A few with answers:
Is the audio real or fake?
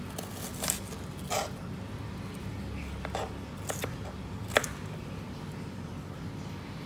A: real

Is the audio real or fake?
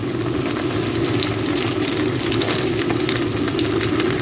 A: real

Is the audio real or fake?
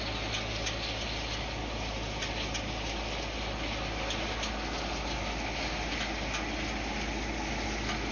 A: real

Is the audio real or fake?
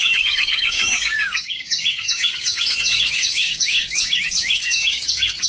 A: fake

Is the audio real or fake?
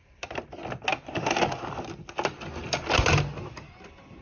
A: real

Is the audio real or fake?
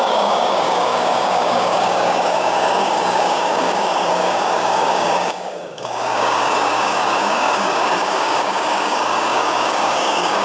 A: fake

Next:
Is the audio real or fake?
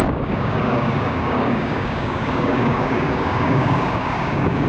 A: fake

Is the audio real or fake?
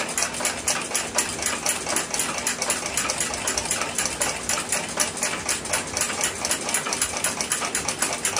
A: real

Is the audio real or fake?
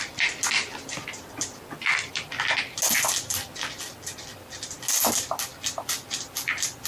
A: real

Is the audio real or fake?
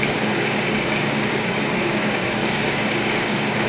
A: fake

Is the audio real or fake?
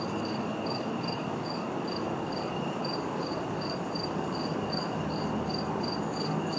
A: fake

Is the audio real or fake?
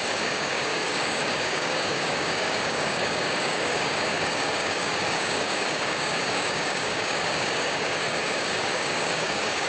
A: fake